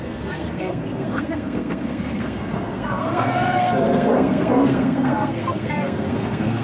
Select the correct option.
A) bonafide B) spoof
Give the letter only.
B